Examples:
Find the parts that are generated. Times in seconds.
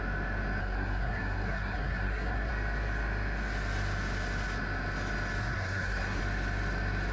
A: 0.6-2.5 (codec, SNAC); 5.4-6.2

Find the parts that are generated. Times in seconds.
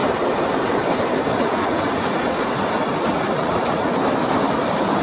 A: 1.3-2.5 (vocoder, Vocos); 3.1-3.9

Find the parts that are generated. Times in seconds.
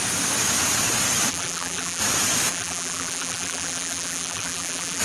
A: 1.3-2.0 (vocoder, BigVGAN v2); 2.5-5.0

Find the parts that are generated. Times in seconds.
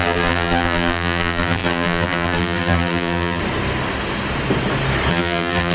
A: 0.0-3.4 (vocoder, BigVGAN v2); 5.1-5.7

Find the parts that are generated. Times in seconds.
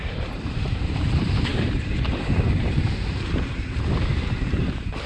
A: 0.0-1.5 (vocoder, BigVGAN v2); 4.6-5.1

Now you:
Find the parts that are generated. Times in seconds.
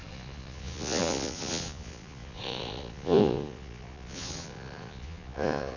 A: 0.0-5.8 (vocoder, Vocos)